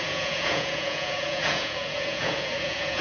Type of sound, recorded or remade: remade